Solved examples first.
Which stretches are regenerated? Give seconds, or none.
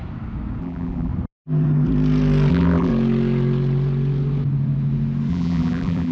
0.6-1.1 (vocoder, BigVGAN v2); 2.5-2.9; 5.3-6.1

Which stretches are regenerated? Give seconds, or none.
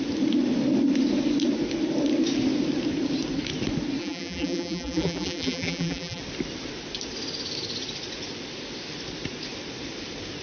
4.0-6.2 (vocoder, BigVGAN v2)